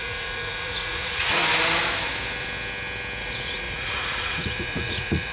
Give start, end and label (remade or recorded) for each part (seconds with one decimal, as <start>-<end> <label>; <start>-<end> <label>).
0.0-1.4 remade; 1.4-3.2 recorded; 3.2-5.3 remade